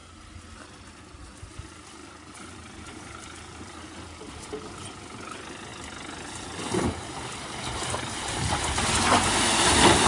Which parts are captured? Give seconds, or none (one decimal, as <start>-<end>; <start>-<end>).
0.0-2.0; 4.3-10.1